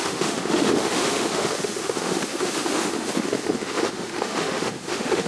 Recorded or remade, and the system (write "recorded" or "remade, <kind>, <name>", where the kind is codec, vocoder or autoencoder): remade, autoencoder, DAC-VAE